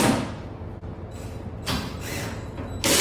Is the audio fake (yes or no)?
no